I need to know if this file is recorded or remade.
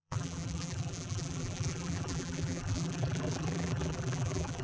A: remade